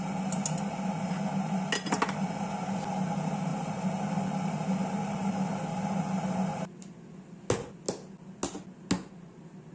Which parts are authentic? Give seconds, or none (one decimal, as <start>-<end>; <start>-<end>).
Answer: 0.0-9.7